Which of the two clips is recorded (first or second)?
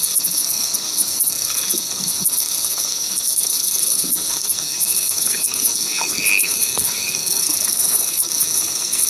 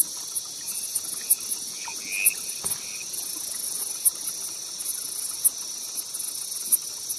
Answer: second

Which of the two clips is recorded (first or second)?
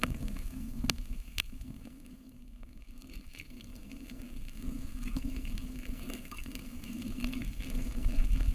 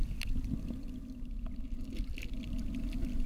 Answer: second